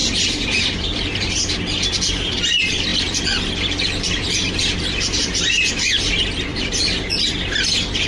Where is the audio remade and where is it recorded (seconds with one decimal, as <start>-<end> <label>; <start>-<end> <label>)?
0.0-1.5 remade; 1.5-2.9 recorded; 2.9-5.7 remade; 5.7-6.5 recorded; 6.5-7.2 remade; 7.2-8.1 recorded